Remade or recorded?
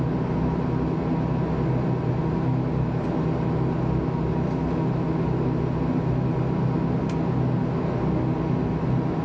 recorded